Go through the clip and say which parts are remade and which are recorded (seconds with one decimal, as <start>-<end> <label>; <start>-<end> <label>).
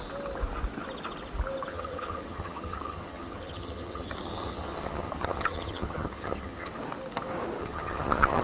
0.0-1.7 recorded; 1.7-6.7 remade; 6.7-7.6 recorded; 7.6-8.4 remade